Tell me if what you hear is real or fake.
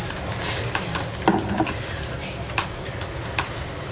real